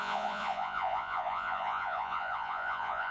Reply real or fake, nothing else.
fake